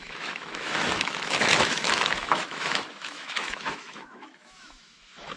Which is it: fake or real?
fake